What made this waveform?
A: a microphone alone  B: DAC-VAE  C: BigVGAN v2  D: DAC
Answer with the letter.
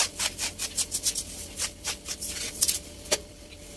C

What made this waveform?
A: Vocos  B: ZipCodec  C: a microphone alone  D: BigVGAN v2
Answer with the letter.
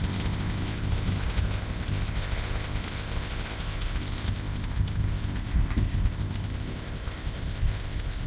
B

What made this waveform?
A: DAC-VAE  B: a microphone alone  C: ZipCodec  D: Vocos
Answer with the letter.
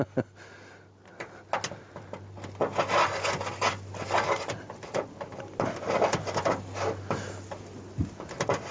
B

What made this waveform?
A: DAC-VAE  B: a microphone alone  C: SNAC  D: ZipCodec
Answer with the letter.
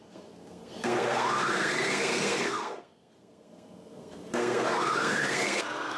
C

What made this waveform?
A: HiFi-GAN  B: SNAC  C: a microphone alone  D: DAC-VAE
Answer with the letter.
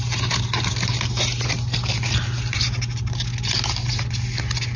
C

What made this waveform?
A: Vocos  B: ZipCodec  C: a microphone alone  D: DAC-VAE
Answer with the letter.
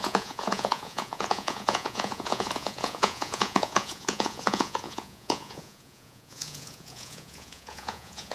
A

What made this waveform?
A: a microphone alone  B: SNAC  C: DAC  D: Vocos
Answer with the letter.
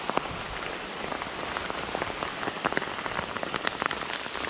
A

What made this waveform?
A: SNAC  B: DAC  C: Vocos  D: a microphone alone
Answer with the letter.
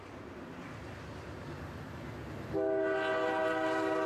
D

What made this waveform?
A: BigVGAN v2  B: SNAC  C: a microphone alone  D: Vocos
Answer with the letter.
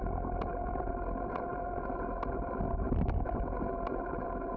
C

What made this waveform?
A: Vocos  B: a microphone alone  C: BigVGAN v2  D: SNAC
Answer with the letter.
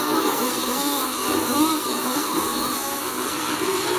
D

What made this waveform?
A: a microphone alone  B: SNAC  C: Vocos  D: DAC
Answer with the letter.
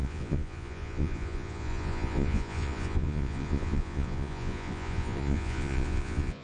C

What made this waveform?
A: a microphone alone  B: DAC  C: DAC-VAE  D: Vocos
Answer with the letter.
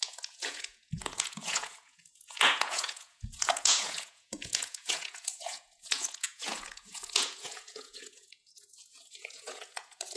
D